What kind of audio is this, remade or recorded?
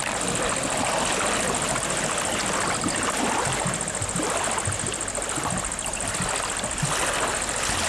recorded